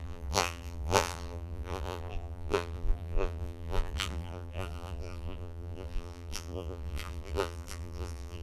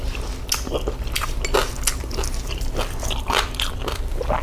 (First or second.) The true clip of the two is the second